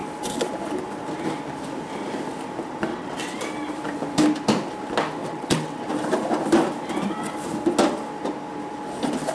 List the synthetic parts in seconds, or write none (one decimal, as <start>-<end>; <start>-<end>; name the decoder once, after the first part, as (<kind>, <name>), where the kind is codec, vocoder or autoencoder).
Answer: 2.9-3.4 (vocoder, WaveNeXt); 5.2-5.9